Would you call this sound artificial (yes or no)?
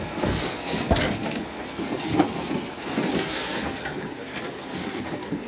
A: yes